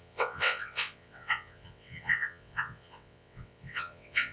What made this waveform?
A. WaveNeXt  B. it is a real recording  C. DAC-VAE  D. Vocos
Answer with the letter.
A